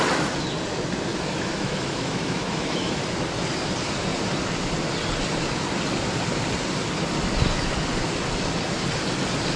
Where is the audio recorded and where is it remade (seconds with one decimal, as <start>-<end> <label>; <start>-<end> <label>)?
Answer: 0.0-1.1 recorded; 1.1-3.0 remade; 3.0-9.6 recorded